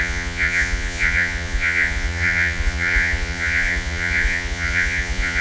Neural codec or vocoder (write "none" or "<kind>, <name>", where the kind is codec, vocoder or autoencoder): vocoder, Vocos